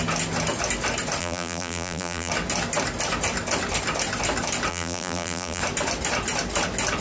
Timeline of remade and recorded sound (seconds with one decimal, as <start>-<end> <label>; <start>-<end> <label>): 0.0-1.2 recorded; 1.2-2.3 remade; 2.3-4.7 recorded; 4.7-5.6 remade; 5.6-7.0 recorded